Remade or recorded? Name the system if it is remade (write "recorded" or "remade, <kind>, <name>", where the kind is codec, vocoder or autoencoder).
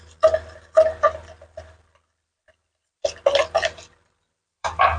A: remade, vocoder, BigVGAN v2